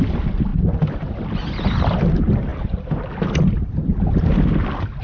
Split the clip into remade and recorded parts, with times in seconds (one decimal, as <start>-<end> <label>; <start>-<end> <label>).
0.0-5.0 recorded